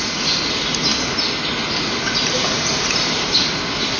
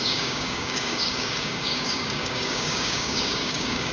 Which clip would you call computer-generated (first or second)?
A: second